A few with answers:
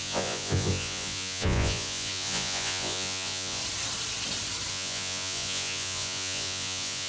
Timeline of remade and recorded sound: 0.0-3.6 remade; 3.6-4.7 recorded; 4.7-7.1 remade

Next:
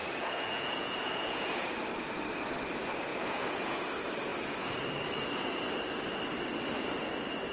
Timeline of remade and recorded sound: 0.0-1.7 remade; 1.7-3.1 recorded; 3.1-3.8 remade; 3.8-7.5 recorded

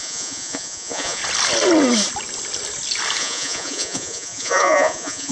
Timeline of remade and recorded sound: 0.0-1.2 remade; 1.2-3.2 recorded; 3.2-5.3 remade

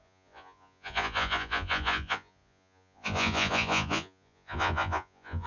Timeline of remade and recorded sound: 0.0-5.5 remade

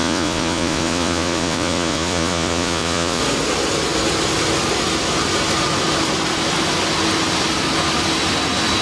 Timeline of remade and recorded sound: 0.0-3.2 remade; 3.2-8.8 recorded

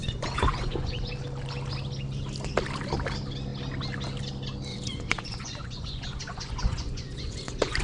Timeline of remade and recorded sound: 0.0-1.1 remade; 1.1-4.7 recorded; 4.7-7.8 remade

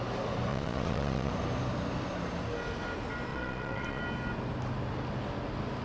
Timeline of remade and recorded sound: 0.0-0.5 recorded; 0.5-1.3 remade; 1.3-3.3 recorded; 3.3-4.0 remade; 4.0-5.8 recorded